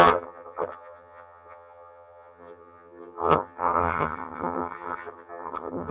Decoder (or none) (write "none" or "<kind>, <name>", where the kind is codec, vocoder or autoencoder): vocoder, HiFi-GAN